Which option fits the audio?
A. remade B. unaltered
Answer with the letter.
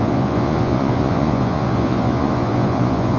A